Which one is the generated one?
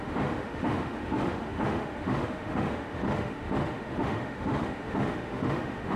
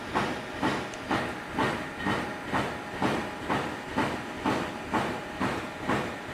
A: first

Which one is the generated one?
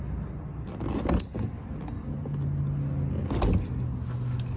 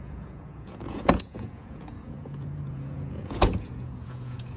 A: second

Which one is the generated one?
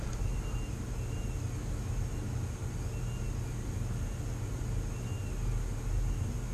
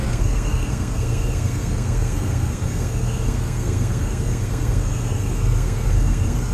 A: second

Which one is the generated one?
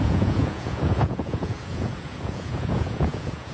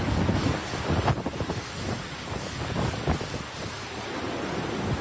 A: first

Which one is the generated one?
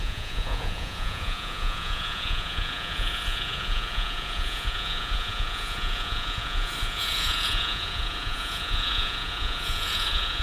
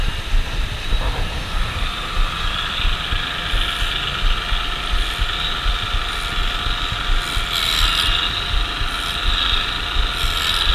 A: first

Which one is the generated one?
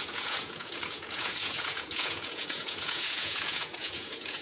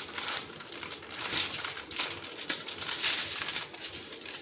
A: first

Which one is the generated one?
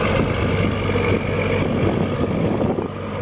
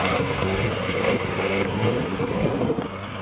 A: second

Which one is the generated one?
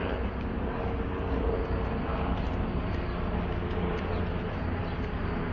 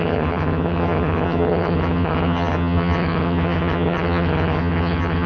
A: second